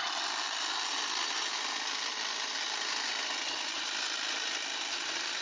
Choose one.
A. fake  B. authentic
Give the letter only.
B